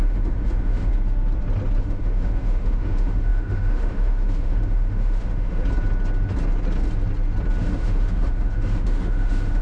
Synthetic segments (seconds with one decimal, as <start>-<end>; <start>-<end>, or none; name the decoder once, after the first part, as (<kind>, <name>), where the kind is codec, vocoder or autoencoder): 0.0-0.9 (autoencoder, DAC-VAE); 1.8-5.6; 7.6-9.6